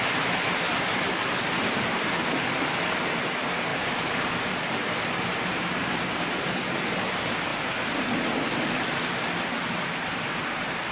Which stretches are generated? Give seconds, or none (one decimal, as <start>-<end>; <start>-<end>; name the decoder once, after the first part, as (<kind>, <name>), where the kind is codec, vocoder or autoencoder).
3.7-6.5 (vocoder, BigVGAN v2)